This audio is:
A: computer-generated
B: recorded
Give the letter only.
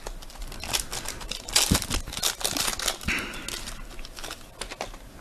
B